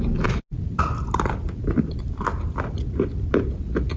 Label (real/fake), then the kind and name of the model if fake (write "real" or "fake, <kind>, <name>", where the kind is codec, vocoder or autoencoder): real